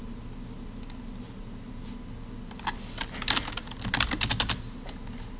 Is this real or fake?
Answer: real